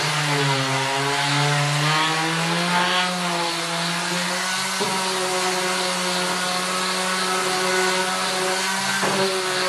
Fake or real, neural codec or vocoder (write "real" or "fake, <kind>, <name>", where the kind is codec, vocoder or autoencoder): real